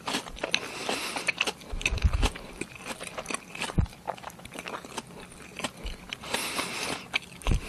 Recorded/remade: recorded